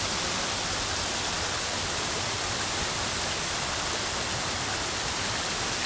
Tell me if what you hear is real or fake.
fake